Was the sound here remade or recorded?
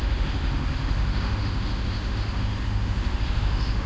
remade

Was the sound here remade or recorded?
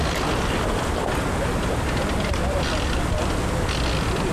recorded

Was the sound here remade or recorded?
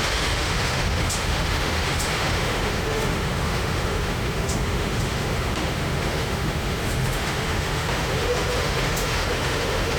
remade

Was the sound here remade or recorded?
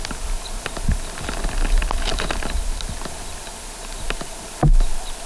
recorded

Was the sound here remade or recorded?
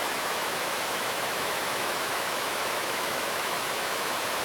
remade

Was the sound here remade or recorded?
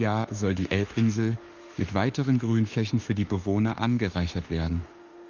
remade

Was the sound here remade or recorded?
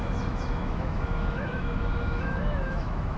remade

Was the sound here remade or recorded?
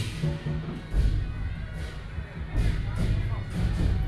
recorded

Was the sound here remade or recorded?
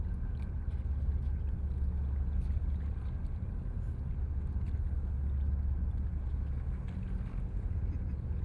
recorded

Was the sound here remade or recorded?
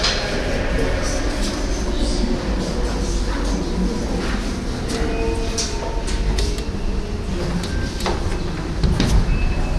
recorded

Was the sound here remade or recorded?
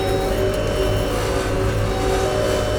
recorded